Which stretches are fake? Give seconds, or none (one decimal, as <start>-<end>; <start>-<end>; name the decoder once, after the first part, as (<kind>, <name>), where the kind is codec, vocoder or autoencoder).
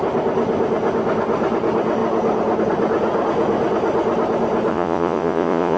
4.7-5.8 (vocoder, Vocos)